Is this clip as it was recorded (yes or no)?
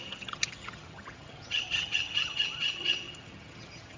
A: no